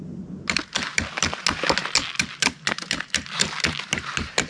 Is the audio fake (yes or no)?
no